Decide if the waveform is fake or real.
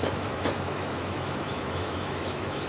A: fake